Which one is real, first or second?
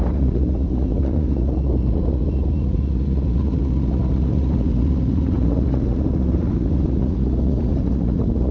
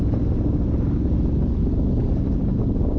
second